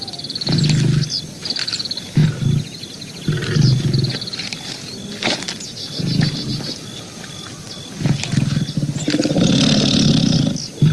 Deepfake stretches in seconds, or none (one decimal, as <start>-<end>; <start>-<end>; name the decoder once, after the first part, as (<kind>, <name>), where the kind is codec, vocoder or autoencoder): none